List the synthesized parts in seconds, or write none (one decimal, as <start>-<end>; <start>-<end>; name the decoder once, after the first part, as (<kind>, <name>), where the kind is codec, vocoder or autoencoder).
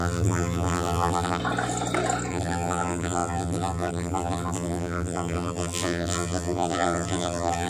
0.0-1.4 (vocoder, BigVGAN v2); 2.3-7.7